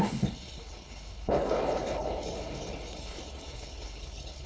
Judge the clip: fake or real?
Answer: fake